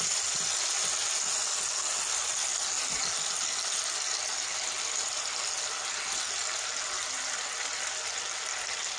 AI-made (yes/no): no